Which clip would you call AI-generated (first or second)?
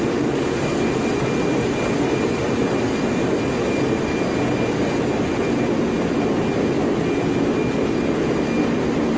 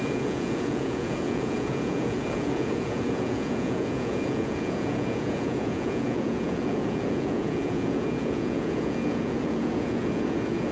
second